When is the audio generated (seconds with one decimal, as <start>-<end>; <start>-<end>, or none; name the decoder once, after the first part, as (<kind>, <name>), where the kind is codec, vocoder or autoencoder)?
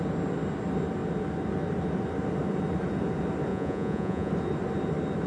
3.5-4.3 (vocoder, Vocos)